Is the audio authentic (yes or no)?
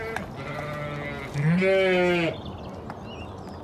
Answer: yes